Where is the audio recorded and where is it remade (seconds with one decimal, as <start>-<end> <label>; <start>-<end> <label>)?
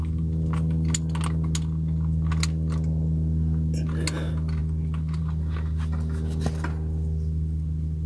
0.0-8.1 recorded